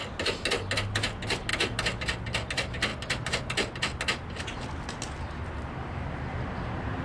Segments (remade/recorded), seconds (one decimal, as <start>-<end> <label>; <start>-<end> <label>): 0.0-7.0 recorded